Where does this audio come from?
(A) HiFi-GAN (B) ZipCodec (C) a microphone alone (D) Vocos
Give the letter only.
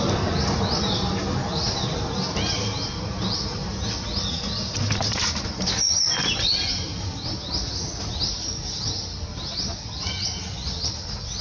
C